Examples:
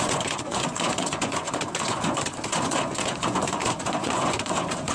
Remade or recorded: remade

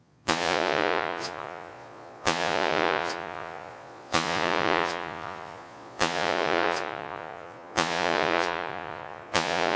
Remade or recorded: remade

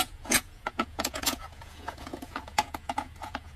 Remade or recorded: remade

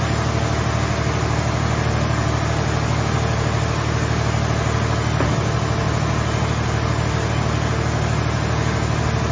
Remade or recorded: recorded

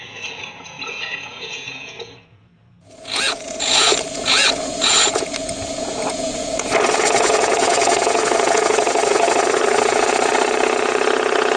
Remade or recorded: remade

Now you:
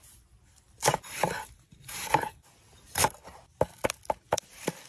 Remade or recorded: recorded